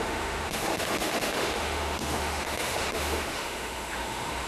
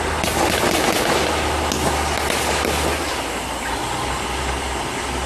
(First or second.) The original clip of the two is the second